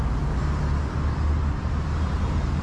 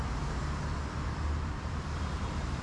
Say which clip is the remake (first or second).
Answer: second